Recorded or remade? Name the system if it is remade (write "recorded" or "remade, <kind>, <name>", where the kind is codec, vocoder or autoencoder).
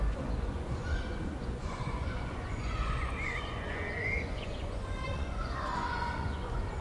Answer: remade, vocoder, Vocos